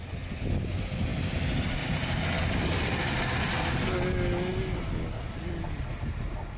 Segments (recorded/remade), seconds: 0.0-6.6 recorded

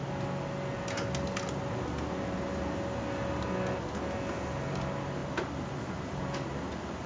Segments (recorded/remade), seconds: 0.0-7.1 recorded

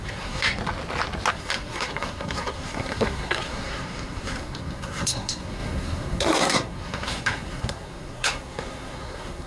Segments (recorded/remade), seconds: 0.0-0.6 remade; 0.6-1.3 recorded; 1.3-9.5 remade

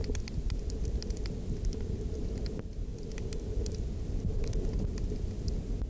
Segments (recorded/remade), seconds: 0.0-5.9 recorded

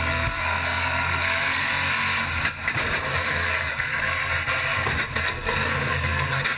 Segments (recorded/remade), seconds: 0.0-1.7 remade; 1.7-3.1 recorded; 3.1-4.3 remade; 4.3-5.2 recorded; 5.2-6.6 remade

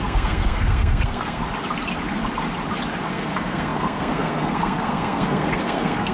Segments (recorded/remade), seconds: 0.0-1.4 remade; 1.4-3.1 recorded; 3.1-6.1 remade